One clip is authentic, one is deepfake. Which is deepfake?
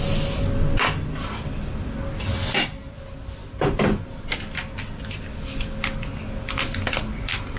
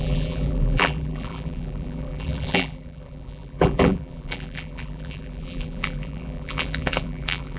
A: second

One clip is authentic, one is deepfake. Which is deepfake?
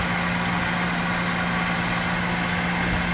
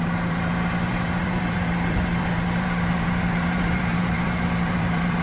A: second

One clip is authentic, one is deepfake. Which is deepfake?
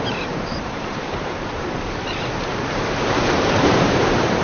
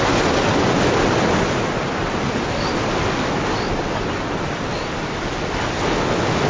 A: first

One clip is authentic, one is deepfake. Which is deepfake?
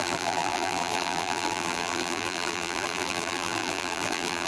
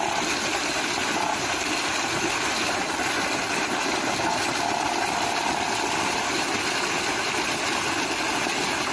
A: first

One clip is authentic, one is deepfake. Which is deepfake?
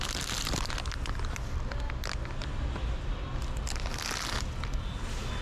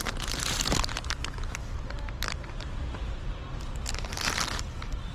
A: second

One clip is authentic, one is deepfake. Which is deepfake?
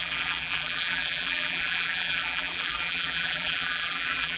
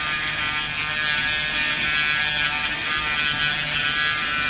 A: first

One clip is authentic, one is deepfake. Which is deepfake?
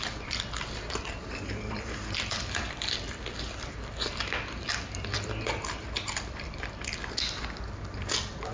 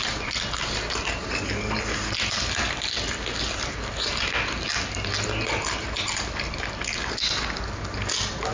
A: first